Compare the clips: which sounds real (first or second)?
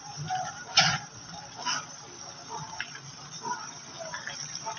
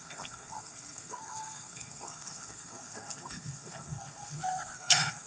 first